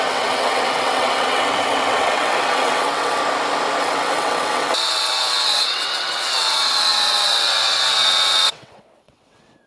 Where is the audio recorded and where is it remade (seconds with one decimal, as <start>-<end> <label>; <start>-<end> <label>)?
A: 0.0-3.2 remade; 3.2-3.8 recorded; 3.8-9.7 remade